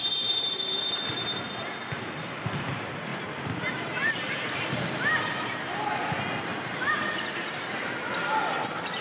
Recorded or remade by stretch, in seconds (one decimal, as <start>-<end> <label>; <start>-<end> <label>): 0.0-1.4 remade; 1.4-3.1 recorded; 3.1-6.0 remade; 6.0-6.5 recorded; 6.5-8.0 remade; 8.0-9.0 recorded